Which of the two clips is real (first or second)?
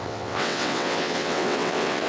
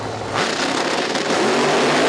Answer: second